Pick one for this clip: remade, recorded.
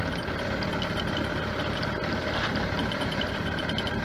recorded